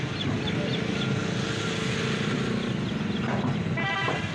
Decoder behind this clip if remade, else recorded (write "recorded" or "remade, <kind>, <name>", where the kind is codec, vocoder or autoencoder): recorded